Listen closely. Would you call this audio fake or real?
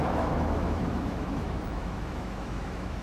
fake